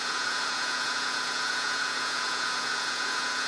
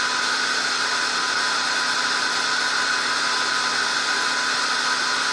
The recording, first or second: second